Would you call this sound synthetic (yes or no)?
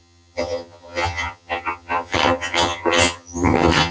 yes